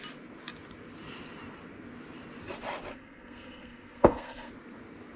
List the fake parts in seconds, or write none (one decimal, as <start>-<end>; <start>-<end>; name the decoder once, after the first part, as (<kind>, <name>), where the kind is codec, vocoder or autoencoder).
2.9-4.5 (codec, SNAC)